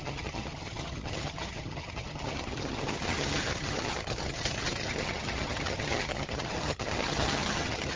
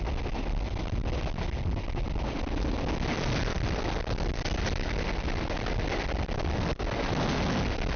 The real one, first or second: second